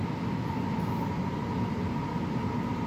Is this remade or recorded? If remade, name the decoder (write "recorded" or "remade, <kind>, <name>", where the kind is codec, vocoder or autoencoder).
recorded